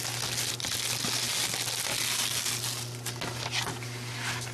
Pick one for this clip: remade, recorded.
recorded